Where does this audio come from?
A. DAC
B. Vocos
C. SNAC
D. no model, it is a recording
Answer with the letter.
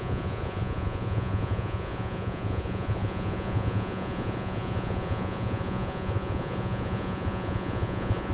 B